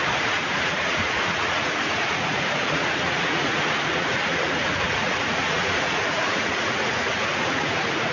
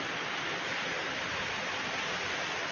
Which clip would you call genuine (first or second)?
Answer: second